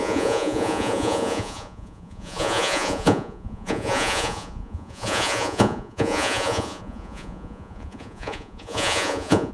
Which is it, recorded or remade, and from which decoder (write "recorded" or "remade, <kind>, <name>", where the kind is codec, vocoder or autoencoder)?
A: remade, vocoder, Vocos